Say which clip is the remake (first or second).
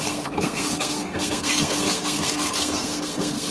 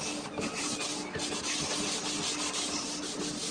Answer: first